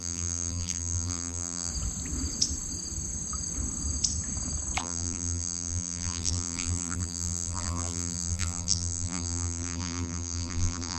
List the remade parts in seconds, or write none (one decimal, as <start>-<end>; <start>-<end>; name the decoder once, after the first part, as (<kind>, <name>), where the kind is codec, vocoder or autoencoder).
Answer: 0.0-1.7 (vocoder, BigVGAN v2); 4.8-11.0